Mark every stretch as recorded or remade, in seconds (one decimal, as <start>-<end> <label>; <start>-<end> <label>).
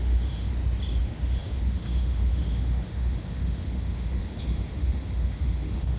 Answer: 0.0-0.5 remade; 0.5-1.0 recorded; 1.0-6.0 remade